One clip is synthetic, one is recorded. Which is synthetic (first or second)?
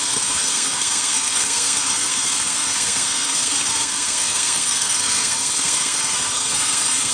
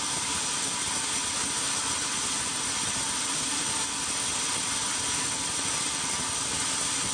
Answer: first